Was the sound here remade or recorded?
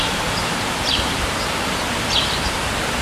remade